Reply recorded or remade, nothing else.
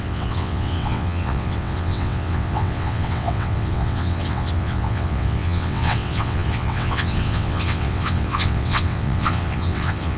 remade